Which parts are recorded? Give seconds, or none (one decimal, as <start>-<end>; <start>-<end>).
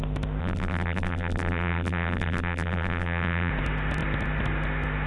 0.0-0.4; 3.5-5.1